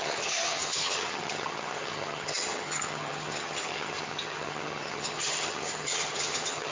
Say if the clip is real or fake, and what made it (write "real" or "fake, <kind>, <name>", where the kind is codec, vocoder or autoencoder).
fake, vocoder, HiFi-GAN